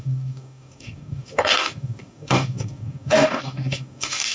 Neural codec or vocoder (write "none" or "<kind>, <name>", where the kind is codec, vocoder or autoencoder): codec, DAC